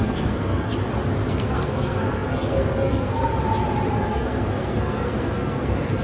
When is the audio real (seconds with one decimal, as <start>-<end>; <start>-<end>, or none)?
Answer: 0.7-1.3; 3.3-3.9